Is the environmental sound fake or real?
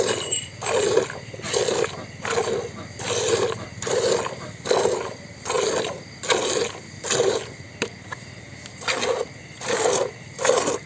real